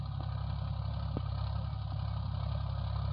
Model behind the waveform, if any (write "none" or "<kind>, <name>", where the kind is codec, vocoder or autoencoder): none